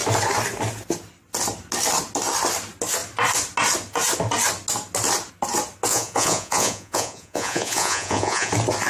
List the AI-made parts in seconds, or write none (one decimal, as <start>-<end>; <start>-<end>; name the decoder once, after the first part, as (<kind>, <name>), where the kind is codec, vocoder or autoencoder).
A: 5.9-8.5 (vocoder, Vocos)